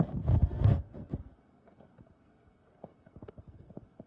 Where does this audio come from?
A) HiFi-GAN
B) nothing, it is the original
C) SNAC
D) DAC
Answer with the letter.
C